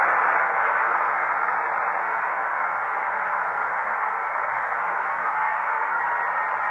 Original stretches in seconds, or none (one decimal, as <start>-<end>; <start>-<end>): 0.0-0.4; 1.5-2.0; 6.0-6.7